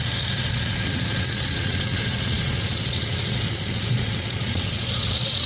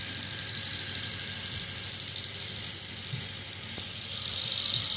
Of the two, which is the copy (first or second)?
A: first